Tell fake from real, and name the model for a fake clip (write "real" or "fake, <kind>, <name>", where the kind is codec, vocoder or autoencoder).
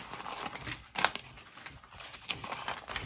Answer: real